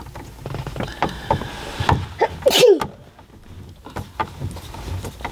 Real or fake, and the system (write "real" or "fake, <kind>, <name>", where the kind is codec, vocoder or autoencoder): real